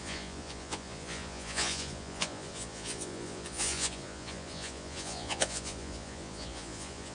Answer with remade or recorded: remade